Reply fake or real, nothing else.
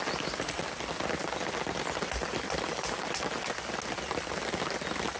real